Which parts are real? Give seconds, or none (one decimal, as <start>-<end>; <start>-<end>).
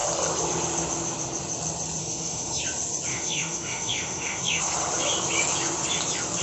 0.0-2.0; 2.6-3.1; 4.6-6.4